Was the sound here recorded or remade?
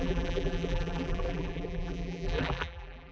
remade